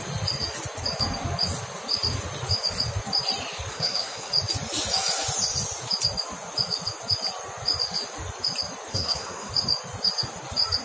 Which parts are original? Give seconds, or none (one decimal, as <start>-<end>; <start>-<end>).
0.0-3.7; 4.3-8.9; 9.5-10.8

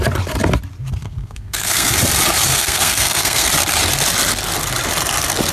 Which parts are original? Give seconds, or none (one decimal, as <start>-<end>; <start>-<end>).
0.0-1.0; 1.9-2.5; 3.5-5.5

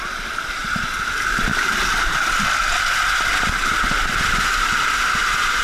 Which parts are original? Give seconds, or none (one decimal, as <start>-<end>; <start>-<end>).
0.0-5.6

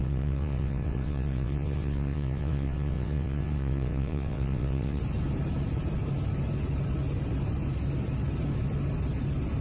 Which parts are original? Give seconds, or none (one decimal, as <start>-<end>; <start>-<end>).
5.0-9.6

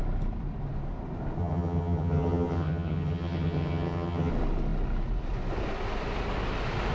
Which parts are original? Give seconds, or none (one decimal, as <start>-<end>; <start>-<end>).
0.0-1.4; 4.3-6.9

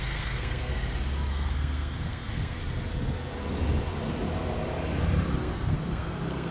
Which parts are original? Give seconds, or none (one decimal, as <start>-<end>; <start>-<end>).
0.7-1.3; 2.6-5.4

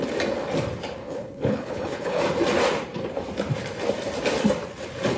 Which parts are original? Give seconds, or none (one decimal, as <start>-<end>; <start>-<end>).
0.0-1.0; 2.2-5.2